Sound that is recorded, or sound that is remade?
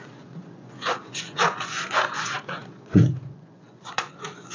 remade